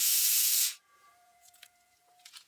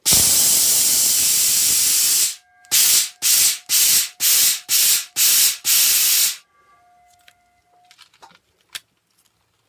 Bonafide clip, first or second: second